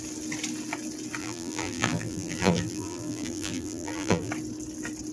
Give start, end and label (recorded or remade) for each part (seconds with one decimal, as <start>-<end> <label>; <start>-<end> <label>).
0.0-1.2 recorded; 1.2-4.3 remade; 4.3-5.1 recorded